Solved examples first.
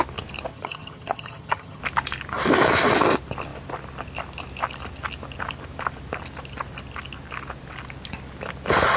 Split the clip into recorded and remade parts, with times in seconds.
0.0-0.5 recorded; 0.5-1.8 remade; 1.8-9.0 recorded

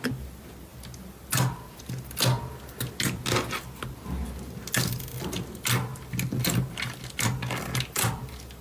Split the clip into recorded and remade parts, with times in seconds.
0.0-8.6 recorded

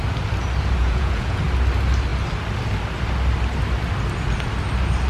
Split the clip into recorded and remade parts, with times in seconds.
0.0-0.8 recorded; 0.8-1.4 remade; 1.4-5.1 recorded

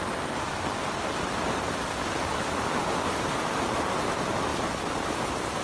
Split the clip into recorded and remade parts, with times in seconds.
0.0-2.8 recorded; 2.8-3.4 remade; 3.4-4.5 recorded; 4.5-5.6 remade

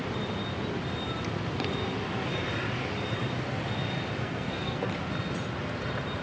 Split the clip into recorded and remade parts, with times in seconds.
0.0-4.2 recorded; 4.2-4.9 remade; 4.9-6.2 recorded

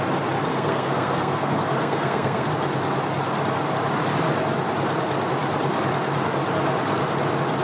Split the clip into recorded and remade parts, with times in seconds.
0.0-0.5 recorded; 0.5-2.5 remade; 2.5-7.6 recorded